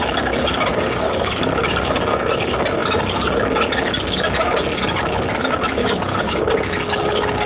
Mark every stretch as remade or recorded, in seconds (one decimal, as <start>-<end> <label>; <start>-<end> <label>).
0.0-0.7 recorded; 0.7-2.3 remade; 2.3-5.8 recorded; 5.8-6.4 remade; 6.4-7.5 recorded